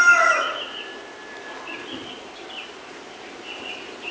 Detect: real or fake real